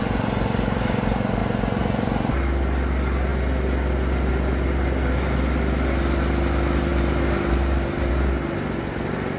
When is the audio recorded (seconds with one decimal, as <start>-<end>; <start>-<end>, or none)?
0.0-9.4